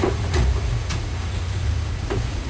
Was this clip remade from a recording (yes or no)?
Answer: yes